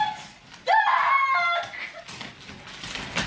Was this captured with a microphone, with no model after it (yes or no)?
yes